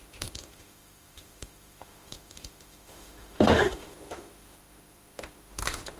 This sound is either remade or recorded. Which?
remade